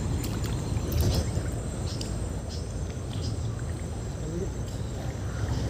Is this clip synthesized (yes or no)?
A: no